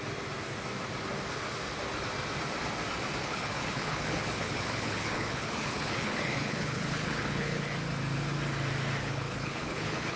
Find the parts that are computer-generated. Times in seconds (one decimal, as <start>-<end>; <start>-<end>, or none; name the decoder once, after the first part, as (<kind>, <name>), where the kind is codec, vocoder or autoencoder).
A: 3.2-7.7 (codec, HILCodec); 9.0-10.2